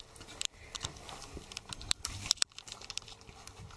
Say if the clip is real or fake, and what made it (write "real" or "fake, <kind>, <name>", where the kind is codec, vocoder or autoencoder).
fake, vocoder, BigVGAN v2